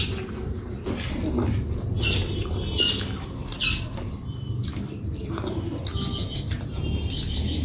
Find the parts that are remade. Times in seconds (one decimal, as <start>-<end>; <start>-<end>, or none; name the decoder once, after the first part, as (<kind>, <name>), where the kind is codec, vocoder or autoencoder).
3.4-5.2 (vocoder, BigVGAN v2)